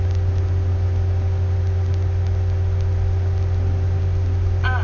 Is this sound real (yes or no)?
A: yes